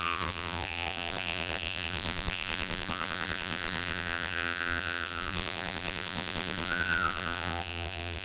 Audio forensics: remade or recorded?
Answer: remade